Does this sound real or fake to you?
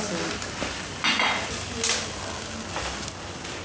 real